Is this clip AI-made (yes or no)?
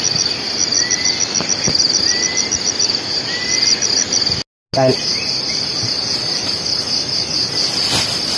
no